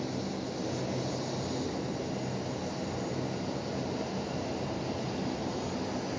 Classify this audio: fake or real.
real